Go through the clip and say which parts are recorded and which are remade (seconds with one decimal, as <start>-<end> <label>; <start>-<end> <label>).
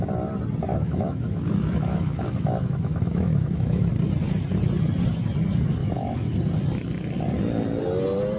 0.0-0.7 recorded; 0.7-3.9 remade; 3.9-5.8 recorded; 5.8-6.4 remade; 6.4-8.4 recorded